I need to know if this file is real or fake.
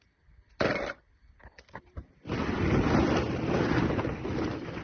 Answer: real